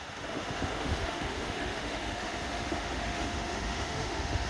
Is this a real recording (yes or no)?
no